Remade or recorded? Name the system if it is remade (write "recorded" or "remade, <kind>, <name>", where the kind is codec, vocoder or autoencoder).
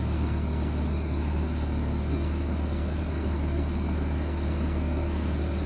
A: remade, codec, SNAC